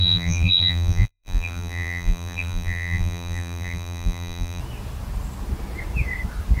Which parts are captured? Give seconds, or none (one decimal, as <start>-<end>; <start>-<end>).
4.6-6.6